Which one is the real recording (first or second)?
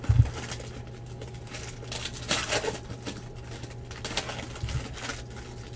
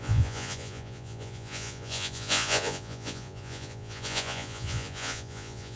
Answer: first